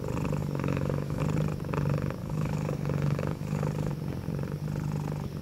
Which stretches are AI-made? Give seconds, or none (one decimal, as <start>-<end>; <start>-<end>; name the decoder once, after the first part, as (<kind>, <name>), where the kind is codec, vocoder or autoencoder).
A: 0.4-1.2 (codec, DAC); 2.2-3.9